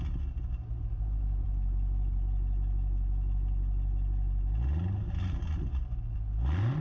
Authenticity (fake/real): real